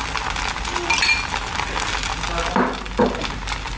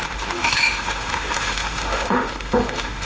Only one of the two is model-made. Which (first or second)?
second